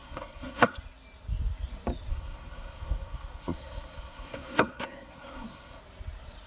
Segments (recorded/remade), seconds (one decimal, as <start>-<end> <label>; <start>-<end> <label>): 0.0-0.8 remade; 0.8-2.1 recorded; 2.1-5.8 remade; 5.8-6.5 recorded